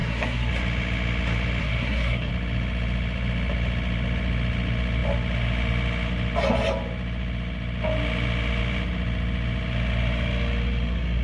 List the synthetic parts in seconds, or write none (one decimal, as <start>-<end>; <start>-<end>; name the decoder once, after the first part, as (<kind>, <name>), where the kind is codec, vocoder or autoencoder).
0.0-0.5 (codec, SNAC); 1.6-2.3